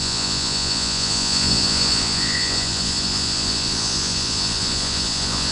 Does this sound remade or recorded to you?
remade